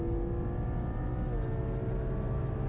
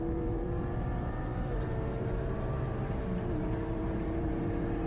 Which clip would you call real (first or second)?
first